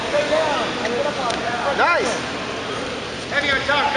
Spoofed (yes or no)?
no